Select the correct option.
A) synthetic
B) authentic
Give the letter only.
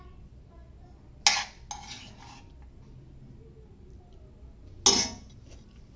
B